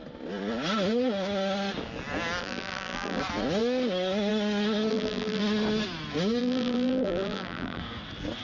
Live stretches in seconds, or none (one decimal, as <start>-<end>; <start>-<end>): 0.0-2.4; 3.2-4.9; 5.4-6.4; 7.8-8.4